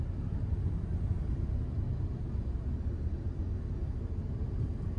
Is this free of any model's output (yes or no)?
yes